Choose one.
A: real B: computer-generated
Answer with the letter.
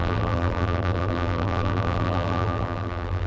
B